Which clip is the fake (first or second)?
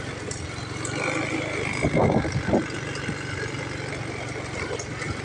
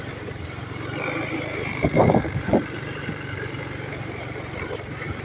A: second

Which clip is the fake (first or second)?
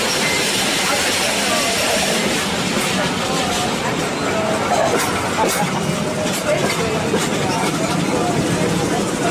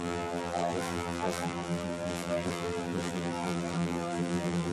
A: second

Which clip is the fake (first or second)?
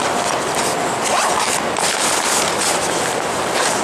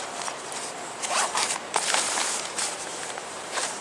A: second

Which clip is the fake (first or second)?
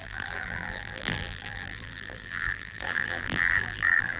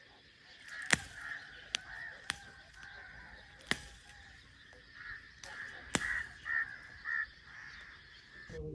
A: first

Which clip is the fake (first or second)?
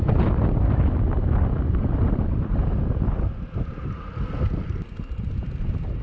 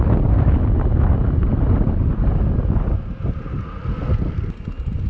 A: first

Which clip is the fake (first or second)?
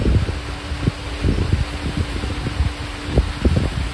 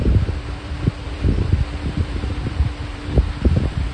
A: second